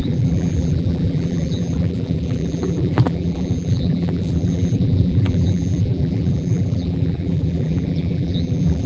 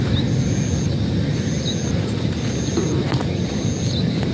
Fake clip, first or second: first